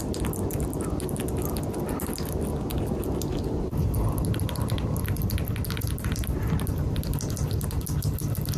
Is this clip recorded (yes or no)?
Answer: yes